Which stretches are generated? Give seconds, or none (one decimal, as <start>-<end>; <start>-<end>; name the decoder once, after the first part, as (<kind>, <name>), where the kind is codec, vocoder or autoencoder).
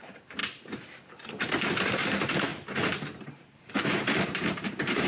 0.0-2.5 (vocoder, BigVGAN v2); 3.2-5.1